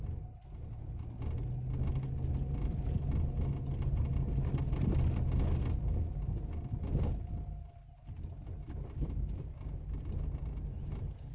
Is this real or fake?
real